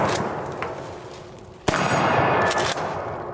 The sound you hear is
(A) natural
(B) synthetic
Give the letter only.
A